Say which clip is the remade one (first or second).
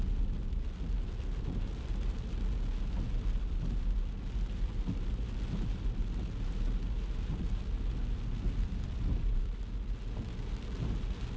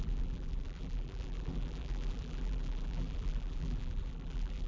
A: second